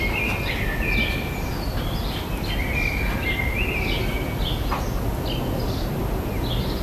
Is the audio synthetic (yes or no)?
no